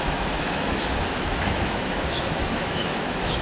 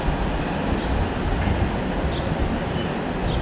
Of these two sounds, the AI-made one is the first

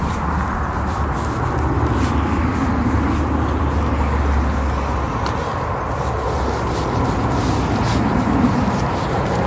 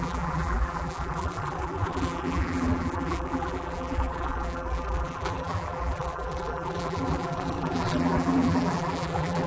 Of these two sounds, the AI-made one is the second